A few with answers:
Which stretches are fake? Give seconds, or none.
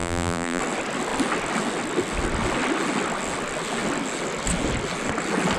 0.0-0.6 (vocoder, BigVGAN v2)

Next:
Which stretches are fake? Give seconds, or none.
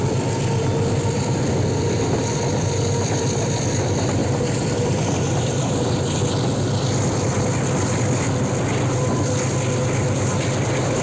4.2-6.2 (vocoder, BigVGAN v2)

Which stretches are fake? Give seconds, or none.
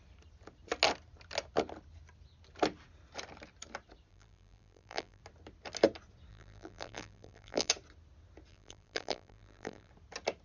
4.1-5.2 (vocoder, BigVGAN v2); 6.3-7.7; 8.5-9.9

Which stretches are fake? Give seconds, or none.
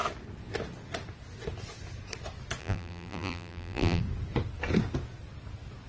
2.6-4.0 (vocoder, BigVGAN v2)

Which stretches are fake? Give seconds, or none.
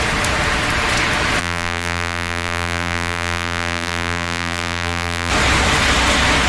1.4-5.3 (vocoder, BigVGAN v2)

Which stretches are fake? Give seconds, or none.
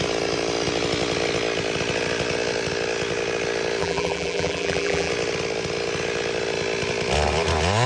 3.8-5.1 (vocoder, BigVGAN v2)